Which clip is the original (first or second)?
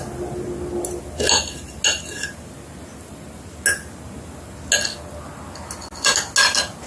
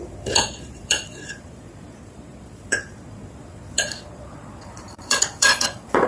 first